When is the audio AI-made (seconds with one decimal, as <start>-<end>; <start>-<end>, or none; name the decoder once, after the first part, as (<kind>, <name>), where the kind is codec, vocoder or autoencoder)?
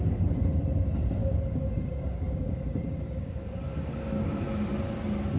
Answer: 1.2-4.4 (codec, DAC)